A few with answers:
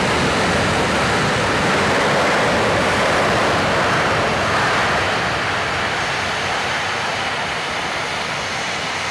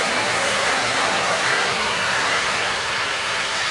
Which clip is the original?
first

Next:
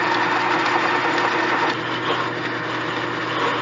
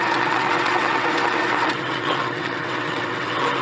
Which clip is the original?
first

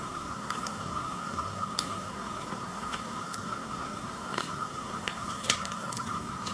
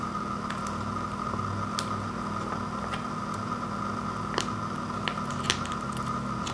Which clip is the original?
second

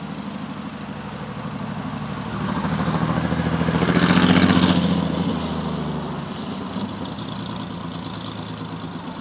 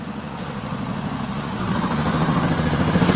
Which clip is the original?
first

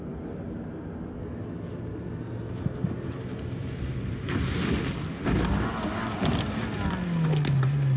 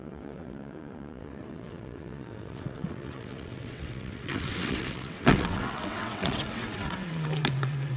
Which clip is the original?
first